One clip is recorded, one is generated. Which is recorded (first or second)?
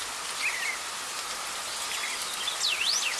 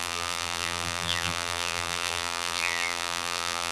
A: first